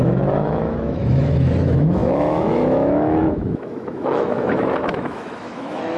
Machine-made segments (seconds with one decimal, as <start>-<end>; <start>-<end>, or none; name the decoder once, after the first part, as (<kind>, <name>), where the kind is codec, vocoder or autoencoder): 0.0-6.0 (autoencoder, DAC-VAE)